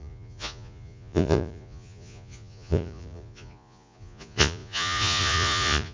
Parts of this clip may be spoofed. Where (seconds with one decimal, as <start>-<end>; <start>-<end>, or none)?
0.0-5.9